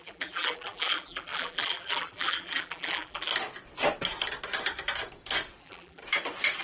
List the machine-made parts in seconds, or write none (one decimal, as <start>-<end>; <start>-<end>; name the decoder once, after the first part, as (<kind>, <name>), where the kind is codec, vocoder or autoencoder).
0.0-3.3 (vocoder, BigVGAN v2); 5.6-6.0